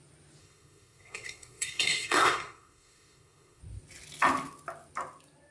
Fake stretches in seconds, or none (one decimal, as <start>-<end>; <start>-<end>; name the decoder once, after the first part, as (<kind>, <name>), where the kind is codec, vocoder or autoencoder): 0.4-3.6 (codec, SNAC)